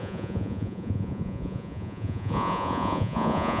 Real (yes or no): no